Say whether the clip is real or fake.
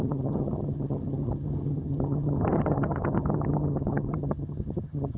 fake